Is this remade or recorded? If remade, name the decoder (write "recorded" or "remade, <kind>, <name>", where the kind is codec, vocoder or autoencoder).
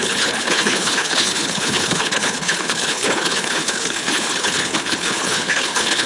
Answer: remade, codec, HILCodec